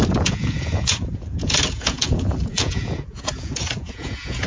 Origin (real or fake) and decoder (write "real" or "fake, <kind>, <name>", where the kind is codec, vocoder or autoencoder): fake, vocoder, Vocos